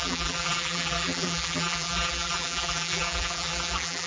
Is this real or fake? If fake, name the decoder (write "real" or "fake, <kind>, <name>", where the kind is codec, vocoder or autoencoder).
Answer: fake, vocoder, BigVGAN v2